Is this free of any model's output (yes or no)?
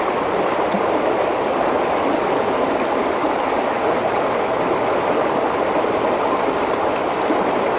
yes